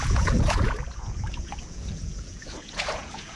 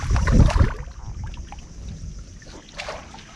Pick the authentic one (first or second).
second